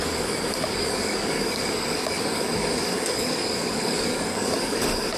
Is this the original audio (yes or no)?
no